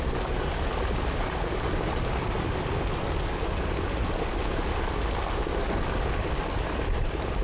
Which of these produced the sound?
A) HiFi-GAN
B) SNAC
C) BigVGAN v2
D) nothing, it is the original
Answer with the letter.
D